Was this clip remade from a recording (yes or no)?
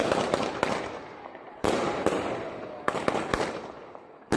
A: no